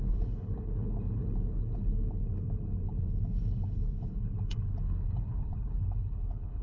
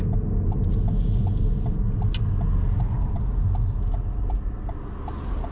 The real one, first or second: second